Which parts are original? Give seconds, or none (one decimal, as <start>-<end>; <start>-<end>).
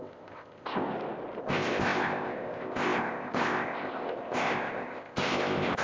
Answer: 0.9-1.4